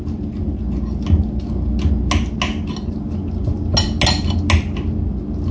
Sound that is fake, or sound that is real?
real